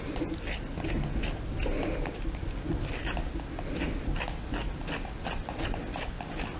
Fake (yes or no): no